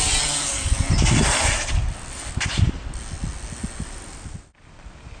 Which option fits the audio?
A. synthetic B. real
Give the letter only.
B